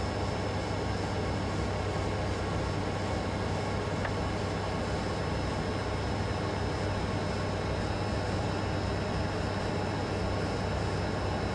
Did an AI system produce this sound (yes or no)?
no